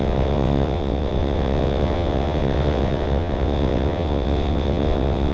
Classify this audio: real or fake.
fake